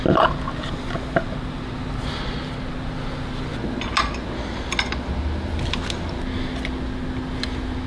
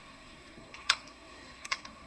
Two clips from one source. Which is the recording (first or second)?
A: first